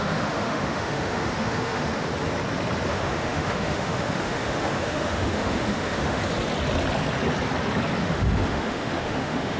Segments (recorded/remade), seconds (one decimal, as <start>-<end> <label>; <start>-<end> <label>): 0.0-2.1 remade; 2.1-2.9 recorded; 2.9-6.2 remade; 6.2-8.0 recorded; 8.0-9.6 remade